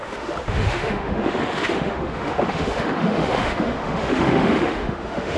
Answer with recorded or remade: remade